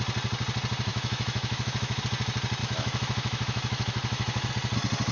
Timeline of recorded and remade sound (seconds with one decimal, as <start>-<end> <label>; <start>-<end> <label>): 0.0-0.9 recorded; 0.9-2.0 remade; 2.0-2.6 recorded; 2.6-4.5 remade; 4.5-5.1 recorded